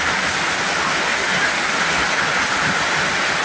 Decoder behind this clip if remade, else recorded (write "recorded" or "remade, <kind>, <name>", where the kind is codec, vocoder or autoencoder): recorded